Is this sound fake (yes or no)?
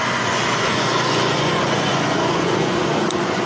yes